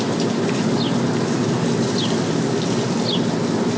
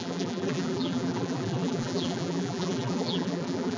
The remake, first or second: second